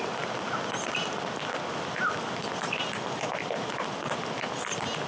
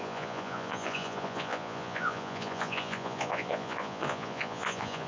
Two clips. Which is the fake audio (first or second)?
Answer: second